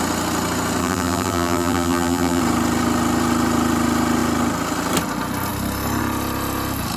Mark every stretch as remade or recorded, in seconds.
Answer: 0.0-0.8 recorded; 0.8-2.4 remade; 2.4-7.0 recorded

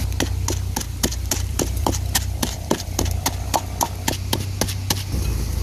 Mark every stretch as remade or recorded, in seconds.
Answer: 0.0-1.1 recorded; 1.1-3.0 remade; 3.0-5.6 recorded

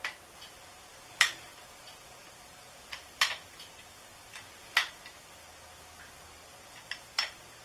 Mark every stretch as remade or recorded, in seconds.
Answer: 0.0-0.9 recorded; 0.9-1.4 remade; 1.4-7.6 recorded